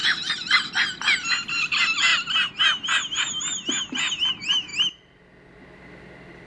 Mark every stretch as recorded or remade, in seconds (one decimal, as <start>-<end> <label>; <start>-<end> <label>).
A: 0.0-2.1 remade; 2.1-4.2 recorded; 4.2-4.7 remade; 4.7-5.6 recorded; 5.6-6.5 remade